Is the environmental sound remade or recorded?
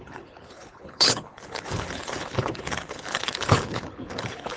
remade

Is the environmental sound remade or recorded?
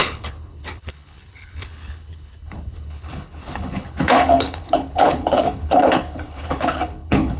remade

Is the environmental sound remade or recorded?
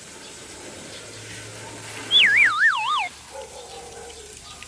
recorded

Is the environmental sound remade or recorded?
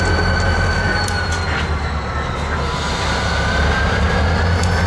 recorded